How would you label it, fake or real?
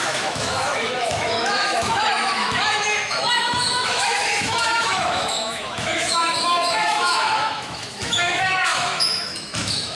fake